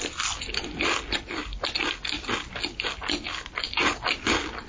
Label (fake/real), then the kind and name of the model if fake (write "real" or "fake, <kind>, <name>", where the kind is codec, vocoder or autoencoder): real